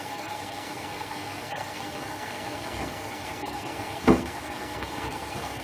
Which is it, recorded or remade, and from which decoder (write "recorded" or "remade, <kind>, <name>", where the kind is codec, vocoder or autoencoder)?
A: remade, codec, SNAC